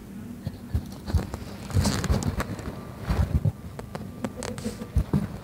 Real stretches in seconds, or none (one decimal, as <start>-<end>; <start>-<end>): 0.0-5.4